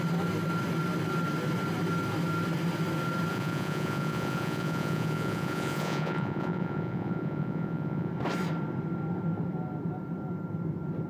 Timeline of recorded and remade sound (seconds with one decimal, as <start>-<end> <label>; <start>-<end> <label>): 0.0-3.3 recorded; 3.3-8.1 remade; 8.1-11.1 recorded